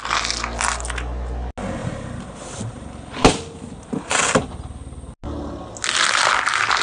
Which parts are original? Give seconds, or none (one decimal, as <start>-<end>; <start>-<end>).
0.0-1.8; 2.6-6.8